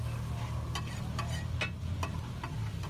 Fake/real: real